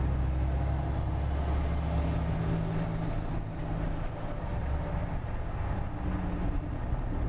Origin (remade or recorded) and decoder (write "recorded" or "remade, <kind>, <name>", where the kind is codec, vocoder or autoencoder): recorded